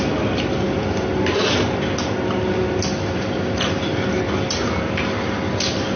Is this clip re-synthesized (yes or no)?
no